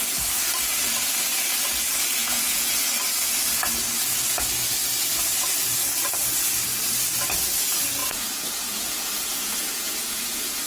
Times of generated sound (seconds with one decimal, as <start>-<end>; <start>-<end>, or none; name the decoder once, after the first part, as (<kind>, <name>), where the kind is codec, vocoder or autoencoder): 2.2-2.8 (vocoder, Vocos); 8.0-10.7